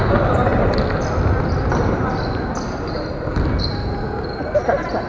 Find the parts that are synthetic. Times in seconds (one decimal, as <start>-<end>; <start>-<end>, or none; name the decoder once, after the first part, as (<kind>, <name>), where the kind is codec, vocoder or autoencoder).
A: none